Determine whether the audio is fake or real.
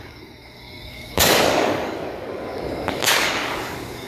fake